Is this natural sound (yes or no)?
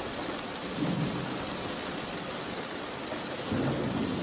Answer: yes